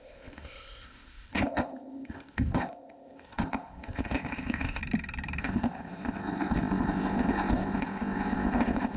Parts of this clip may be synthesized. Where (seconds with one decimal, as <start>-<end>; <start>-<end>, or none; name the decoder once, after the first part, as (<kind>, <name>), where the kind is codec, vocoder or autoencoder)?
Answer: 0.0-4.8 (codec, ZipCodec); 5.4-9.0